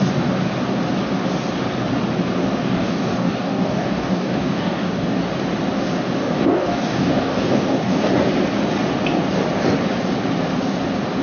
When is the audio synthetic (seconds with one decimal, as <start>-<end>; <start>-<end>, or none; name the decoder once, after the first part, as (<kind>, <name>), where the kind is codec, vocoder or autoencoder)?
2.6-5.2 (codec, DAC); 6.2-8.1